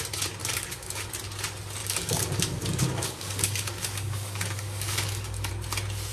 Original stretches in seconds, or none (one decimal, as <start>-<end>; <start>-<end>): 0.0-0.4; 1.1-1.8; 5.5-6.1